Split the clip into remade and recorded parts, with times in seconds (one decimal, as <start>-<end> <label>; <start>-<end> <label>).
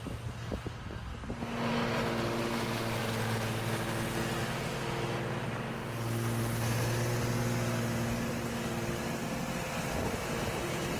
0.0-11.0 recorded